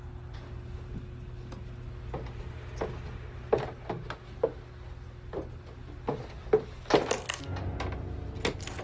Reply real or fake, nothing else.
real